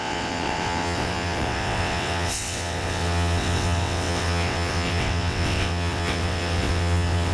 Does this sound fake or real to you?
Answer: fake